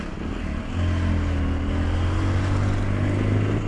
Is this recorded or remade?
recorded